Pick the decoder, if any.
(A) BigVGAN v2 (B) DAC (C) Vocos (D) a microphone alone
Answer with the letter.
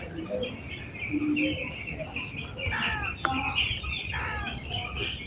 D